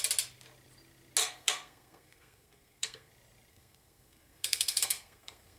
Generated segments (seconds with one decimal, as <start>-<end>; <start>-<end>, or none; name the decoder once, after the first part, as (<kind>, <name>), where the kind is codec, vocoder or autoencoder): 1.2-3.1 (codec, SNAC); 3.5-5.6